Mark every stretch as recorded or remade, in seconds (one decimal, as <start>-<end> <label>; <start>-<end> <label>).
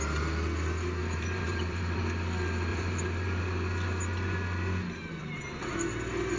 0.0-1.0 recorded; 1.0-2.0 remade; 2.0-2.7 recorded; 2.7-3.4 remade; 3.4-6.4 recorded